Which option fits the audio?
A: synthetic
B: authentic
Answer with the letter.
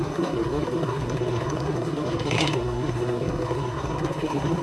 A